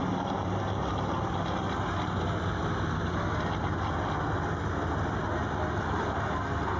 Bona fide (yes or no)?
yes